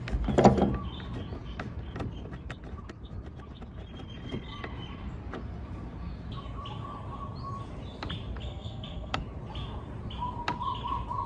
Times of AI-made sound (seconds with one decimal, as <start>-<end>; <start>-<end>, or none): 8.4-9.2